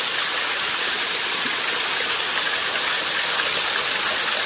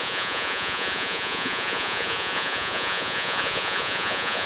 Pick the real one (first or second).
first